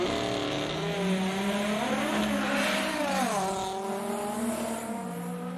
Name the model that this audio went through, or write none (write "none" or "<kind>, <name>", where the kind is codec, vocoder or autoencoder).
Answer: none